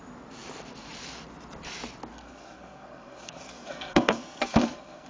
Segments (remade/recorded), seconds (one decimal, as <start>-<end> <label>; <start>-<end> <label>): 0.0-2.1 recorded; 2.1-5.1 remade